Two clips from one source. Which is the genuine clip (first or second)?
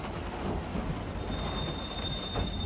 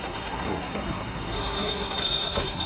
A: first